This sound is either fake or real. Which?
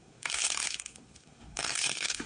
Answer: fake